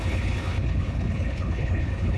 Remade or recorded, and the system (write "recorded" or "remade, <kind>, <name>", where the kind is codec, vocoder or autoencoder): remade, codec, HILCodec